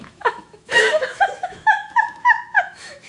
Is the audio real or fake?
fake